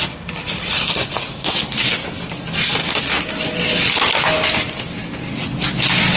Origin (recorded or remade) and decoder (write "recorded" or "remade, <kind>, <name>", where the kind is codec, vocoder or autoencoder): recorded